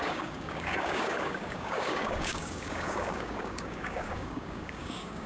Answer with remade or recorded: remade